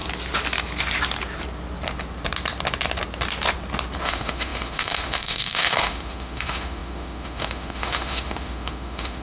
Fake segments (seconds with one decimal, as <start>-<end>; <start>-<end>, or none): 4.0-9.2